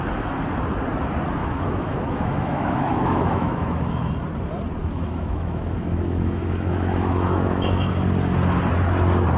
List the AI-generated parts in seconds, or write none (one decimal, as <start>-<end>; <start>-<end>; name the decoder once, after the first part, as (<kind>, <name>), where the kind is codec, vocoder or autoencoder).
1.4-4.1 (autoencoder, DAC-VAE); 4.8-7.9